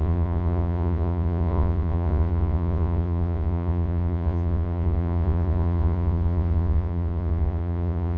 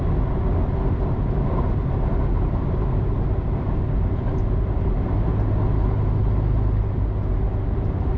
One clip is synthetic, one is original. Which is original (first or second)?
second